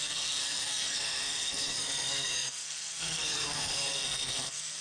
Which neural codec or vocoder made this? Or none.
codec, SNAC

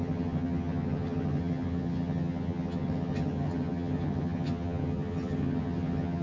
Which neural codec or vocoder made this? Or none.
vocoder, HiFi-GAN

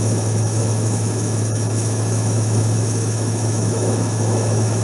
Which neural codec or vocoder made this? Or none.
autoencoder, DAC-VAE